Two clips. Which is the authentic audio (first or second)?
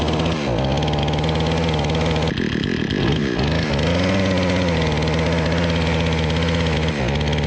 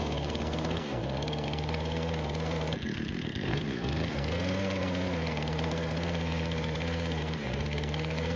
first